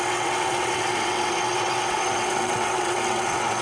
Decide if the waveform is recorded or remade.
remade